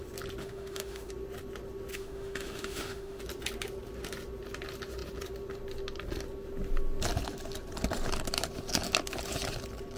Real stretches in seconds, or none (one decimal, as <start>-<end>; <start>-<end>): 0.0-0.4; 1.1-1.9; 3.2-10.0